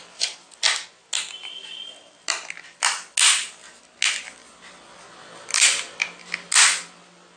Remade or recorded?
recorded